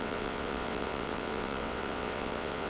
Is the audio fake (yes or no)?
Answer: yes